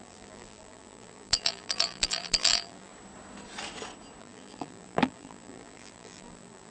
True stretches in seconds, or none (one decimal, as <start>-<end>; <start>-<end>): 2.9-4.2